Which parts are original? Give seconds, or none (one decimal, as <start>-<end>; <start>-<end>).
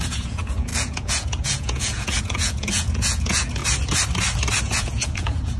3.6-4.6